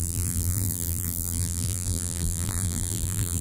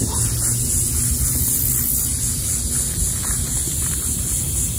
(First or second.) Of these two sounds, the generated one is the first